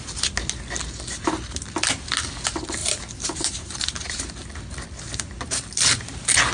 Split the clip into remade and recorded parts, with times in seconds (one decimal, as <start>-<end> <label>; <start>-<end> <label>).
0.0-2.8 recorded; 2.8-4.3 remade; 4.3-6.5 recorded